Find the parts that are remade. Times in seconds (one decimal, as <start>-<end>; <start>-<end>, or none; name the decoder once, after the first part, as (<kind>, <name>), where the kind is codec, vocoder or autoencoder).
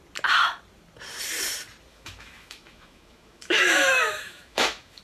1.9-5.0 (autoencoder, DAC-VAE)